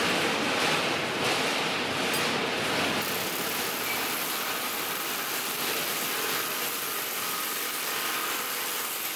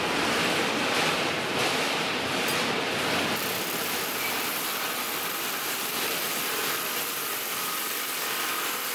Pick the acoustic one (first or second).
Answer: first